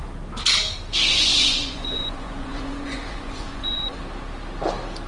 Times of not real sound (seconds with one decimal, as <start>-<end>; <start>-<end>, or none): 1.1-4.0